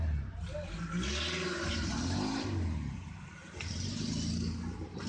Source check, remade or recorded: recorded